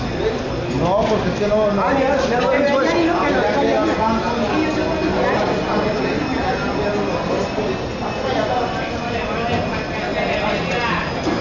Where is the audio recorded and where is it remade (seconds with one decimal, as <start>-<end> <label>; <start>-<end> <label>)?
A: 0.0-11.4 recorded